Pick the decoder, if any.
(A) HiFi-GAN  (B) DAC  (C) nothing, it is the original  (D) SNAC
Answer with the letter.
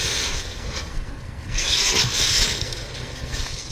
D